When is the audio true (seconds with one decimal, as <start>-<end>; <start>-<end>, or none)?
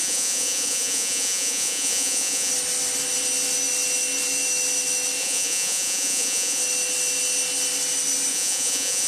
2.5-5.2; 6.6-8.3